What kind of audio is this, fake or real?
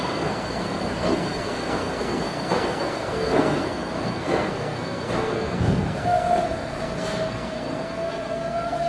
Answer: fake